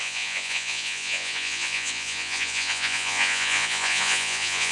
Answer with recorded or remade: remade